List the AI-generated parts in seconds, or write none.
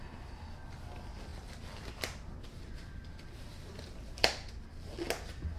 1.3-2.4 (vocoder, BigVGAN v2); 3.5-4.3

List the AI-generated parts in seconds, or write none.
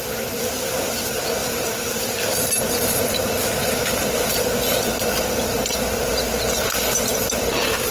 none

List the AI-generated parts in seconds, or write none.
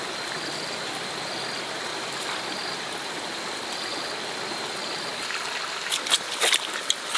none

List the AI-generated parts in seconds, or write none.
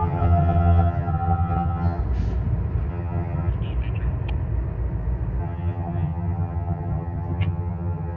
0.0-2.0 (vocoder, HiFi-GAN); 2.9-3.5; 5.4-8.2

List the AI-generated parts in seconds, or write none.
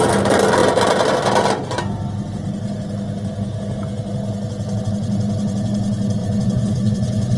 6.2-7.4 (vocoder, Vocos)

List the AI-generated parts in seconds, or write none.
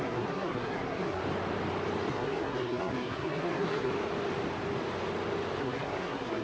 0.0-1.2 (codec, SNAC); 2.1-3.9; 5.6-6.4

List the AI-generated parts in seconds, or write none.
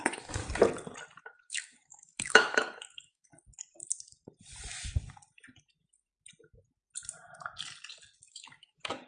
0.0-0.4 (codec, DAC); 1.2-3.3; 8.3-9.1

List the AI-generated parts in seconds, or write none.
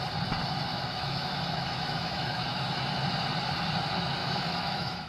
0.7-2.8 (autoencoder, DAC-VAE); 4.2-5.1